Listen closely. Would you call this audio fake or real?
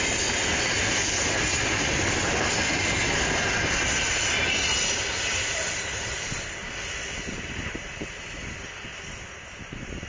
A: real